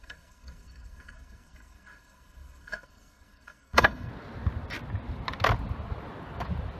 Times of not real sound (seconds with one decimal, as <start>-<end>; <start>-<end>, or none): 0.0-4.1